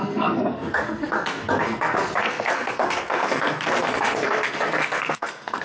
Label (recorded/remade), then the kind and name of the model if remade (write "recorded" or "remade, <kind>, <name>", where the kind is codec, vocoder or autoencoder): remade, codec, SNAC